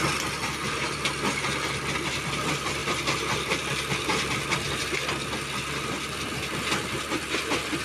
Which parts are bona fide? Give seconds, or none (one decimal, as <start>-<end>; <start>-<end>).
0.0-7.8